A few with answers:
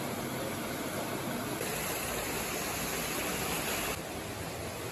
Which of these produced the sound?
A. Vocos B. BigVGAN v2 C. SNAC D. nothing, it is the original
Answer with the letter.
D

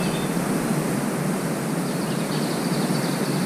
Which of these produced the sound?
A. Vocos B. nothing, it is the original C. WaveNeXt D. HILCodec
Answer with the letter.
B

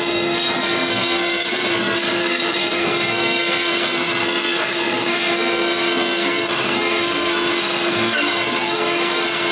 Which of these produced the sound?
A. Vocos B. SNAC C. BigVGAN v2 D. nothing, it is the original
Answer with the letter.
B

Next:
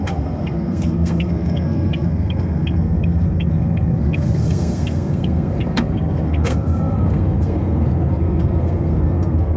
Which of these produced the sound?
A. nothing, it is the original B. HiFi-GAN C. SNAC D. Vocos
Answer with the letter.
C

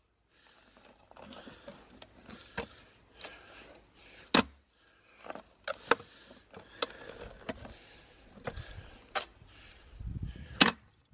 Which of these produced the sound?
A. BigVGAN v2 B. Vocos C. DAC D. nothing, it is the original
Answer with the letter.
D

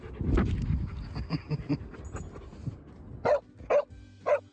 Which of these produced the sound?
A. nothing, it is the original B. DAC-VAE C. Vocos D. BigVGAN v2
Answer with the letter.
A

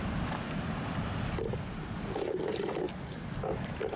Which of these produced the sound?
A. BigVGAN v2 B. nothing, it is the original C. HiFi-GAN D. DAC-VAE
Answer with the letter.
B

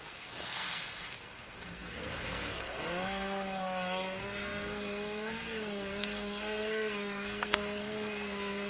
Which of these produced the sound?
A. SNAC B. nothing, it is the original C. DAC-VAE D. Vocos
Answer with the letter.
A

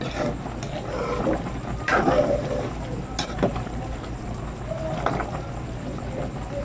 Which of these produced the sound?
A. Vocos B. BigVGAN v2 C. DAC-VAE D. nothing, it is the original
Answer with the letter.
B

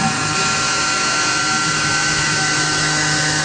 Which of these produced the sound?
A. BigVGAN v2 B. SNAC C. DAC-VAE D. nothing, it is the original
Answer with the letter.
C